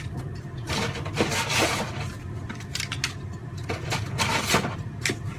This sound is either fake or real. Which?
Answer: real